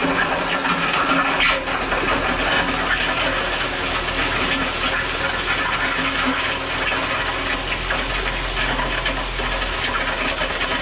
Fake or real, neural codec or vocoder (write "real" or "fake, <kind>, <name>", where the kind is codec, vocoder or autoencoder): real